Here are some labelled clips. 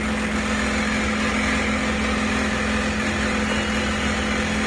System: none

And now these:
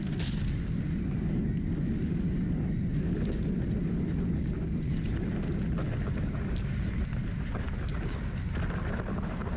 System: none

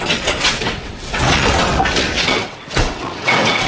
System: vocoder, WaveNeXt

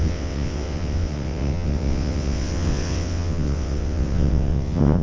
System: vocoder, WaveNeXt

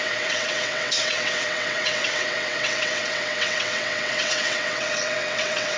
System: vocoder, WaveNeXt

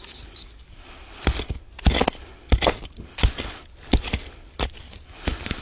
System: none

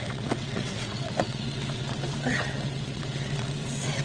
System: vocoder, WaveNeXt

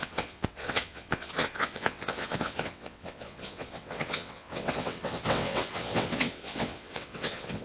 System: vocoder, WaveNeXt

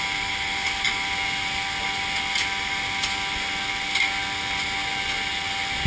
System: none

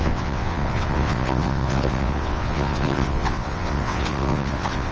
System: vocoder, WaveNeXt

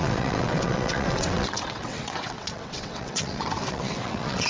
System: vocoder, WaveNeXt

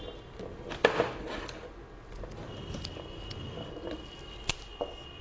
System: none